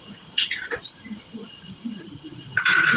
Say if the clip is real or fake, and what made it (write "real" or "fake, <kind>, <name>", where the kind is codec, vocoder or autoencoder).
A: fake, vocoder, Vocos